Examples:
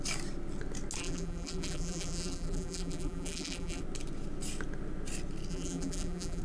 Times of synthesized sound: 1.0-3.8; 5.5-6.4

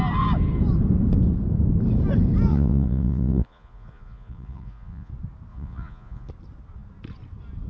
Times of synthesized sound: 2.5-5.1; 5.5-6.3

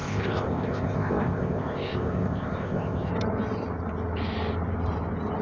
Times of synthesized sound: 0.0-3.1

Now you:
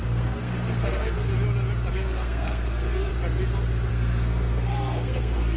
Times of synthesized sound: 0.0-1.3; 1.9-3.1; 3.9-5.6

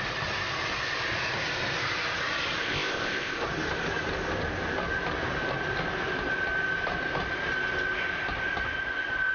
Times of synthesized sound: 2.6-3.4